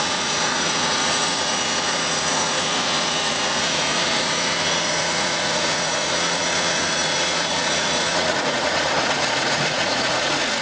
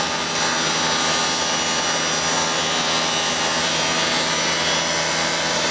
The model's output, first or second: first